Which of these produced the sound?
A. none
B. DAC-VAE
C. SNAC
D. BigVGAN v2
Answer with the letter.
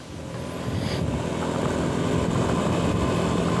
A